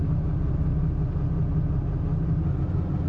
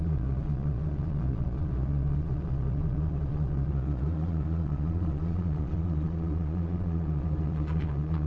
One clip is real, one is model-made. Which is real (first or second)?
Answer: first